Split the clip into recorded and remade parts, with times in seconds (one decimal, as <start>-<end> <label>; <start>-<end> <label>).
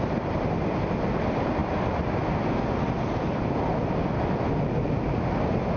0.0-5.8 recorded